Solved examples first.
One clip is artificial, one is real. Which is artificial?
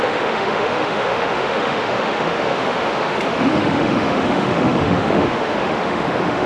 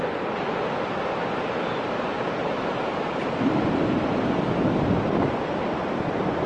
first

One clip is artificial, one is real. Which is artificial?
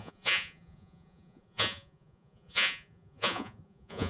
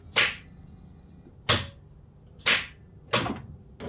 first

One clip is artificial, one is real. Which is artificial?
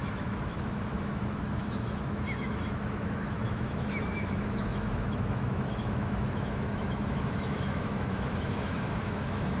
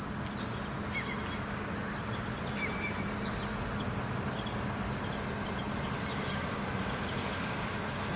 first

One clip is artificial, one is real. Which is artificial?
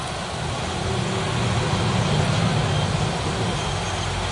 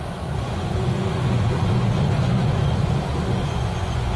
second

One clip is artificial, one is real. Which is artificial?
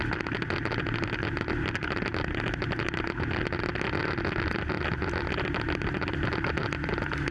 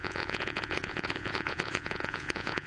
second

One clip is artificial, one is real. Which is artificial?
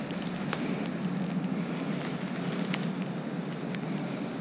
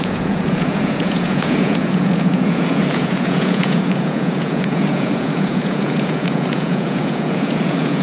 second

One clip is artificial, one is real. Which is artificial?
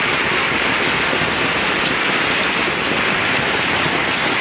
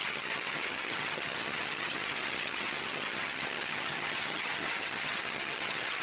second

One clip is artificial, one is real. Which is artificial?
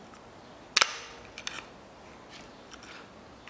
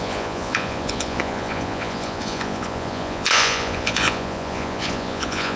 second